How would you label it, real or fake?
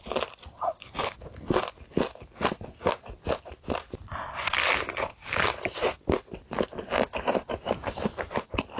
real